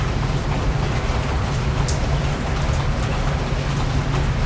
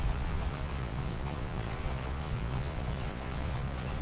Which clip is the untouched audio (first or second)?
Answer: first